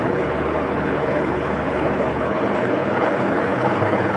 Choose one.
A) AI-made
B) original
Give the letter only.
A